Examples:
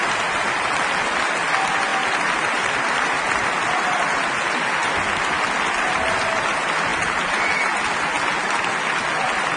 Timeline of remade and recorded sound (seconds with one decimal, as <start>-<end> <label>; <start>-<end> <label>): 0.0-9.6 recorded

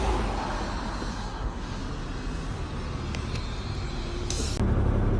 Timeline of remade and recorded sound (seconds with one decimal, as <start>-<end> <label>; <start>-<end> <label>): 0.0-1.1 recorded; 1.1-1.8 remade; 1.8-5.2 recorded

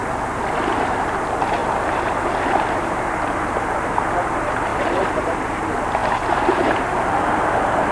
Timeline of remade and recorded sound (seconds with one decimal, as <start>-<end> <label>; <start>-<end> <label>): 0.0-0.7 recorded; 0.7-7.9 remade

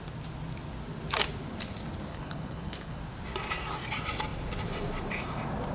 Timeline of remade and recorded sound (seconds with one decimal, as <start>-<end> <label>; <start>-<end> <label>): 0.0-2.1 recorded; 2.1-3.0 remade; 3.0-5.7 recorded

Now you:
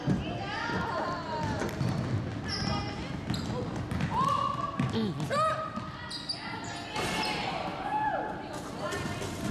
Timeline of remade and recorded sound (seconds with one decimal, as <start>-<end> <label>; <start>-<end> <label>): 0.0-7.7 recorded; 7.7-8.6 remade; 8.6-9.5 recorded

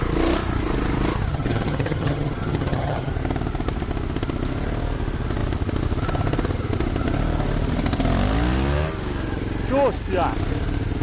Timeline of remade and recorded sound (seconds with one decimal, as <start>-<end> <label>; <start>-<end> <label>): 0.0-1.3 recorded; 1.3-3.1 remade; 3.1-11.0 recorded

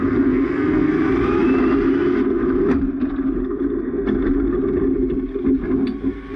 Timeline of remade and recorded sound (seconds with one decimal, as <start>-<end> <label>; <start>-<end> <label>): 0.0-0.9 remade; 0.9-6.4 recorded

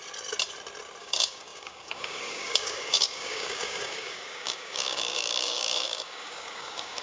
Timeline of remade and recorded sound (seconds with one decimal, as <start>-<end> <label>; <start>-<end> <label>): 0.0-1.0 recorded; 1.0-7.0 remade